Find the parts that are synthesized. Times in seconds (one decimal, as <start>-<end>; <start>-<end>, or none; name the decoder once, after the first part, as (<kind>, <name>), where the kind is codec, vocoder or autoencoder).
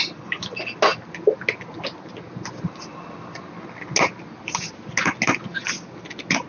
none